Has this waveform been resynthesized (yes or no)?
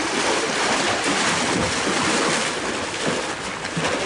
no